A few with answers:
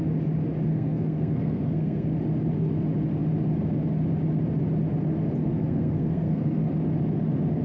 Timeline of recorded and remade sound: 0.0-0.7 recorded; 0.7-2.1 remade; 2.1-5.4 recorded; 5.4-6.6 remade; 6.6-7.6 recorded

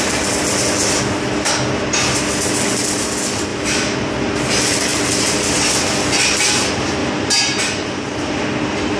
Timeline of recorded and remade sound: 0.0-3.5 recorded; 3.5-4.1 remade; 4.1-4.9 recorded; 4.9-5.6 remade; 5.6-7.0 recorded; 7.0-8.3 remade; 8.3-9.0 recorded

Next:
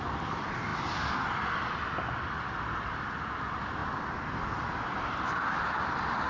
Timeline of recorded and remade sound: 0.0-6.3 recorded

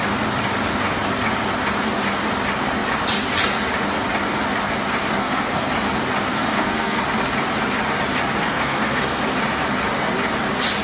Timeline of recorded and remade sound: 0.0-5.2 recorded; 5.2-5.7 remade; 5.7-6.3 recorded; 6.3-7.0 remade; 7.0-8.4 recorded; 8.4-9.2 remade; 9.2-10.8 recorded

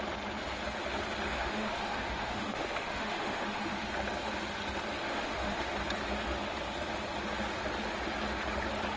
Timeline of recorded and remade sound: 0.0-1.3 recorded; 1.3-3.9 remade; 3.9-5.0 recorded; 5.0-5.7 remade; 5.7-9.0 recorded

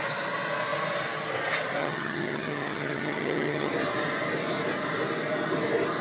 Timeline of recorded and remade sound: 0.0-1.8 recorded; 1.8-3.7 remade; 3.7-6.0 recorded

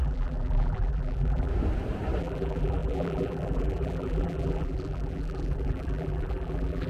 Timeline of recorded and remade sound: 0.0-1.5 remade; 1.5-2.2 recorded; 2.2-6.9 remade

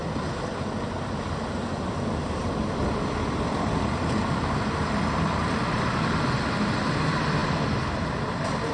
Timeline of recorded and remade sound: 0.0-8.7 recorded